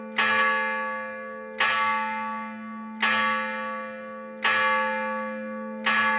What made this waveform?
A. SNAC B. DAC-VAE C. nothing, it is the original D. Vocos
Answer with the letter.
C